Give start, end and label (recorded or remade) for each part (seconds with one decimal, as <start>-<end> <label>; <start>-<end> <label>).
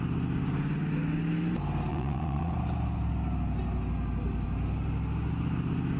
0.0-1.9 recorded; 1.9-2.5 remade; 2.5-6.0 recorded